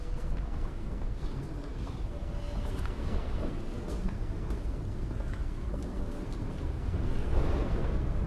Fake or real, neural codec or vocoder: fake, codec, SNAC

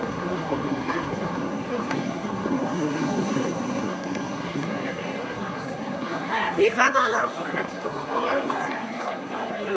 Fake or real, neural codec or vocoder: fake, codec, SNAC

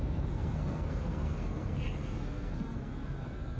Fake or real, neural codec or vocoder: fake, codec, SNAC